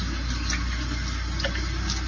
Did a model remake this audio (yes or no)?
no